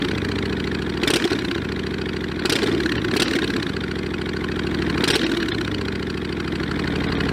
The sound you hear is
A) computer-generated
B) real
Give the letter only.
B